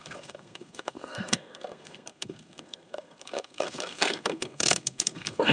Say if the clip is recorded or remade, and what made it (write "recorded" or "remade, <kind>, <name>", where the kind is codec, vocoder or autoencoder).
remade, codec, SNAC